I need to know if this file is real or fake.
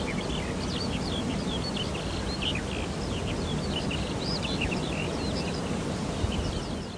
real